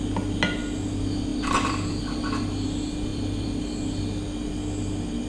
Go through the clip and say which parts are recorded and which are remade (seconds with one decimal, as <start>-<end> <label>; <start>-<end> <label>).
0.0-1.3 recorded; 1.3-2.0 remade; 2.0-3.1 recorded; 3.1-3.9 remade; 3.9-5.3 recorded